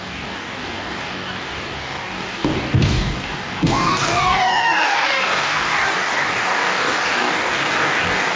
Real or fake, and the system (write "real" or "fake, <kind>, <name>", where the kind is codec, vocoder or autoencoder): fake, codec, DAC